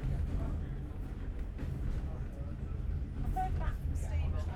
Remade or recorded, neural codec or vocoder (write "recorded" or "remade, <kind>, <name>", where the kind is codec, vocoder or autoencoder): recorded